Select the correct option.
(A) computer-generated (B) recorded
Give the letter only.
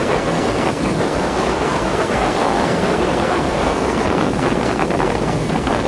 A